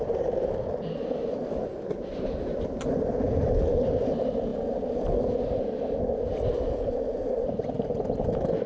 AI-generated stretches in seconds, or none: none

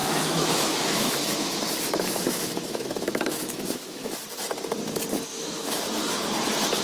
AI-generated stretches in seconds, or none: 0.0-4.1 (autoencoder, DAC-VAE); 5.3-5.8

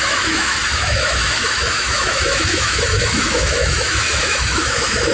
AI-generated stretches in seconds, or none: 0.0-5.1 (autoencoder, DAC-VAE)

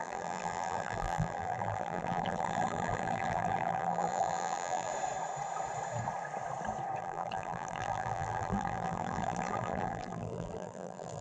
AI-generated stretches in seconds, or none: 0.0-4.9 (vocoder, BigVGAN v2); 7.0-11.2

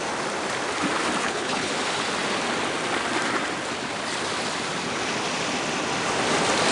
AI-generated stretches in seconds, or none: 1.2-1.7 (codec, HILCodec)